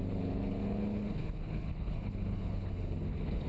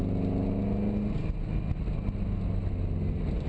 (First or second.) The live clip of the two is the second